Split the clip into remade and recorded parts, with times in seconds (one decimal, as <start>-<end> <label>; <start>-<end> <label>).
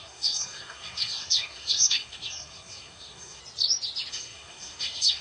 0.0-3.4 remade; 3.4-4.1 recorded; 4.1-5.2 remade